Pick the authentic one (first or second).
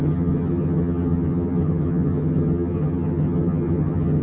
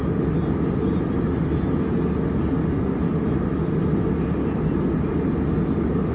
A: second